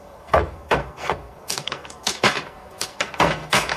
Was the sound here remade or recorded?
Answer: remade